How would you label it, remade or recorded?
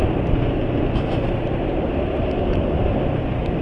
recorded